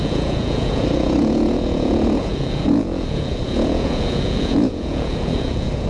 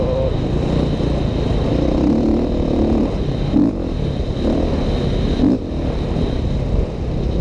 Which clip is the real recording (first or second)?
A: second